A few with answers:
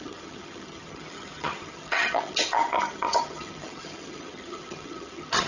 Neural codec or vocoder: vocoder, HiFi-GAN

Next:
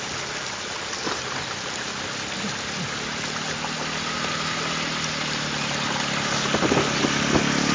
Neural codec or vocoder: none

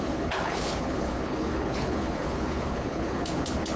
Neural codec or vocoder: codec, HILCodec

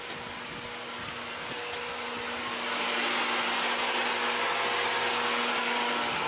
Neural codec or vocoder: none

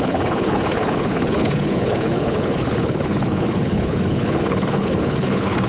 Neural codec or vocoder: codec, HILCodec